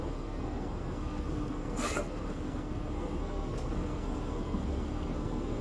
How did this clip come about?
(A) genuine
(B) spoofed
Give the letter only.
B